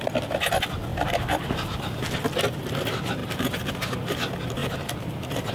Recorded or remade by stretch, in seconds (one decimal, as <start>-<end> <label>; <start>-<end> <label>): 0.0-0.9 recorded; 0.9-2.1 remade; 2.1-3.2 recorded; 3.2-3.7 remade; 3.7-4.6 recorded; 4.6-5.5 remade